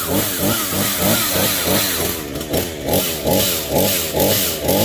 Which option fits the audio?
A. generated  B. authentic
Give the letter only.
B